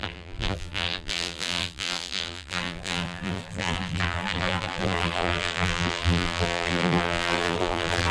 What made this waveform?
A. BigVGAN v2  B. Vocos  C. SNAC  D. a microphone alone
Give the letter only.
A